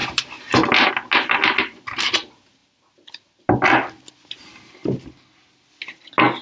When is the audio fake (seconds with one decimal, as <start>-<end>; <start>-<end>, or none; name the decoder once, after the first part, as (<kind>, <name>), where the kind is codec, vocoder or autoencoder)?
none